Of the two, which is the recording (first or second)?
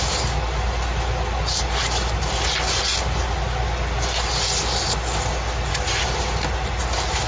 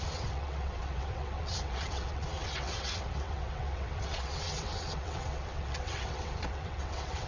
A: first